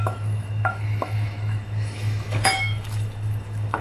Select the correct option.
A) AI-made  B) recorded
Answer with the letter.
A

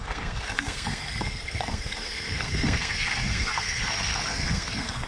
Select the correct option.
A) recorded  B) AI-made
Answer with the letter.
B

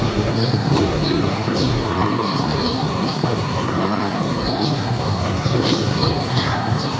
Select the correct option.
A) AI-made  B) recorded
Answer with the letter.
A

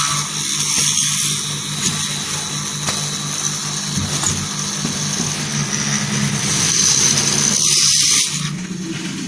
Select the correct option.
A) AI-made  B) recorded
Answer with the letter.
B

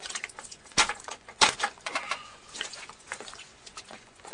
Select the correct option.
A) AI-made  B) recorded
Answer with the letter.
A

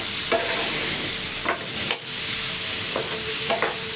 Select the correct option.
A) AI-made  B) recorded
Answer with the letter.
B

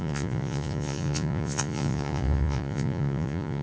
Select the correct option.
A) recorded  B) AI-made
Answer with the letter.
B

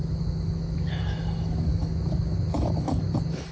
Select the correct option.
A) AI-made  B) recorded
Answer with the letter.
A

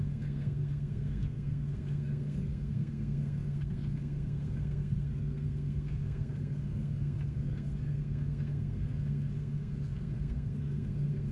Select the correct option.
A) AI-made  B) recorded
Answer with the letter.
A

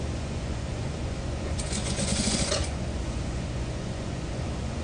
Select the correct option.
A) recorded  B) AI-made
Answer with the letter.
B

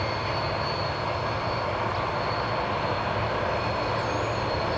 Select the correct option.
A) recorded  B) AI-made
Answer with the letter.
A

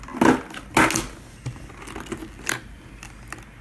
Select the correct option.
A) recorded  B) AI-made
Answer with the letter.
A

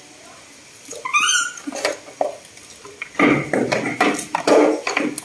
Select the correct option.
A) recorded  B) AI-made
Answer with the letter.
A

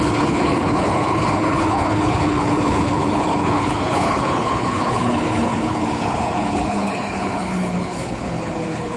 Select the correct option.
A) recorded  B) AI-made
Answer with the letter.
B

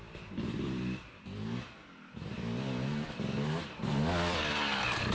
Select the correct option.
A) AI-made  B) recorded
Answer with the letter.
B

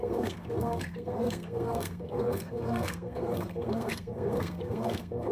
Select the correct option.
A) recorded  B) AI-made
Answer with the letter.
B